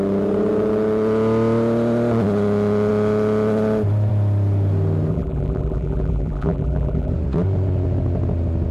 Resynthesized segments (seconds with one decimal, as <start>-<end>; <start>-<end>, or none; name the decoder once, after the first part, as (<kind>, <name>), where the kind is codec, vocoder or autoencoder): 5.1-7.1 (vocoder, BigVGAN v2)